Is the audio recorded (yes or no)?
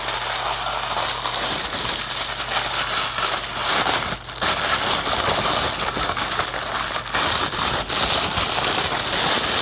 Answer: yes